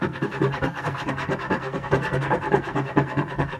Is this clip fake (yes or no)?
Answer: yes